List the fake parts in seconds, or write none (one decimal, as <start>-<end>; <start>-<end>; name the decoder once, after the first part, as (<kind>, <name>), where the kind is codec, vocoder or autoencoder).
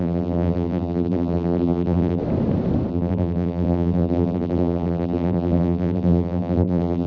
0.0-2.2 (vocoder, BigVGAN v2); 2.9-7.1